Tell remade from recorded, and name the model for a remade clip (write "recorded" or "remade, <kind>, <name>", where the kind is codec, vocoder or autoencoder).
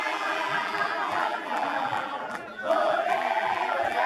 remade, vocoder, BigVGAN v2